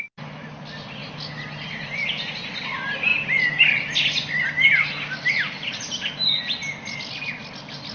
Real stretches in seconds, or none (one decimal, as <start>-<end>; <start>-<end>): 0.0-7.9